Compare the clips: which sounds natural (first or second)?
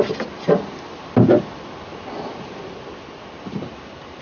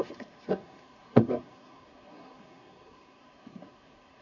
first